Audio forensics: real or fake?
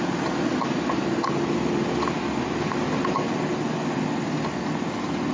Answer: real